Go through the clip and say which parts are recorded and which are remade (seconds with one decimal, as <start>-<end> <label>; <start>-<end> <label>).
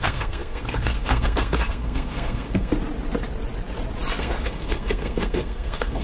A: 0.0-2.7 remade; 2.7-4.2 recorded; 4.2-6.0 remade